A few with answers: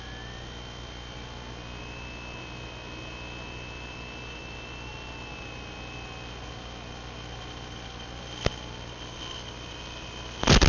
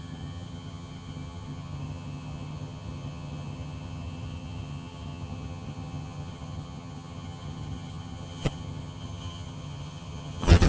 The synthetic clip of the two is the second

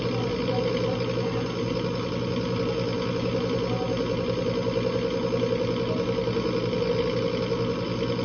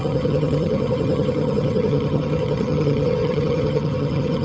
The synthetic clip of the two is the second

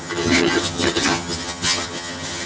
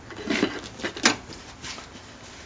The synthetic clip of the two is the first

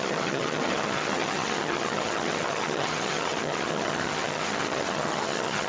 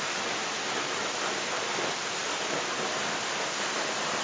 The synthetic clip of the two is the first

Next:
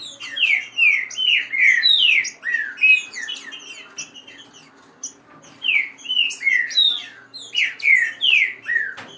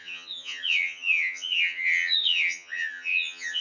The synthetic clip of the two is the second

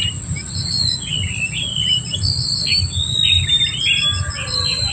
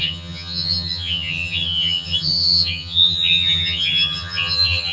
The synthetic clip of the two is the second